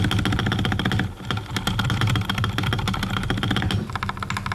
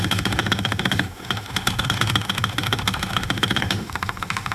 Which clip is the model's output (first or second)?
second